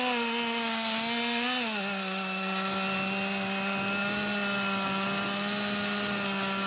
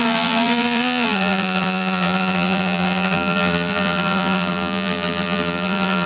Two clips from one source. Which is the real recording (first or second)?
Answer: first